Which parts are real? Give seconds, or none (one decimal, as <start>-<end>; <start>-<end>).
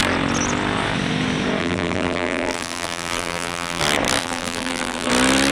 0.0-1.6; 3.8-4.2; 5.1-5.5